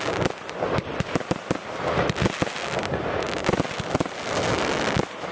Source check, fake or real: real